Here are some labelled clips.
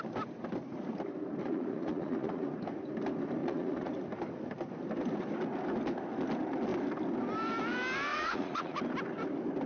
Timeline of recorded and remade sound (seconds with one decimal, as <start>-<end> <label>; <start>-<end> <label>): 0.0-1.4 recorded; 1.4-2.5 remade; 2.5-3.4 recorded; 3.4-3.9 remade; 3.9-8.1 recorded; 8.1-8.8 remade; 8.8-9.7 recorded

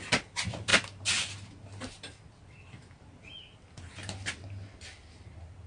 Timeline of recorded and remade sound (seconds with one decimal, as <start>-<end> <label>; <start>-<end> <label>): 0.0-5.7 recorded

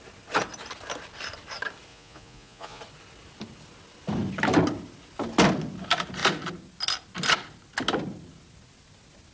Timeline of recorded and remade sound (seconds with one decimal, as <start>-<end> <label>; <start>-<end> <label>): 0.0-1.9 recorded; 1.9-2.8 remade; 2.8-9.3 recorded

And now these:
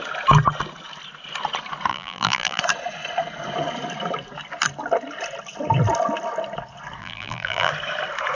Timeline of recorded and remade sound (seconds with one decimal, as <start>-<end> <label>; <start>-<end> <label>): 0.0-1.9 recorded; 1.9-2.6 remade; 2.6-7.0 recorded; 7.0-7.7 remade; 7.7-8.3 recorded